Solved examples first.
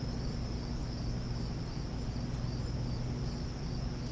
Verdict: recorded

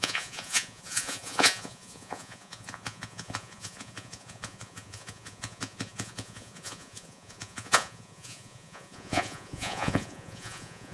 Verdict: remade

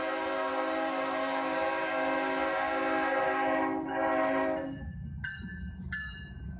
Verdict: recorded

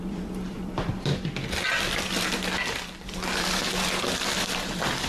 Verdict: remade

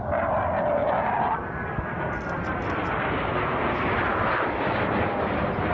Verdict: recorded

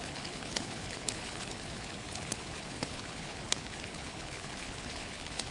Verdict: remade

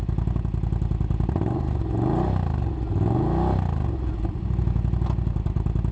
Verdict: recorded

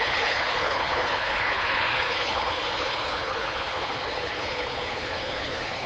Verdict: remade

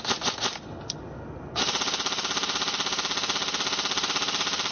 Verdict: recorded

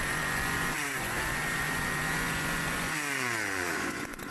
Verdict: remade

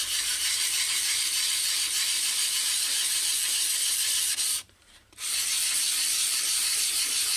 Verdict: remade